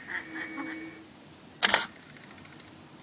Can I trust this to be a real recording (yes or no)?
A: yes